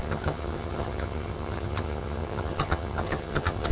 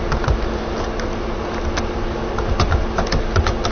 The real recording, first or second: second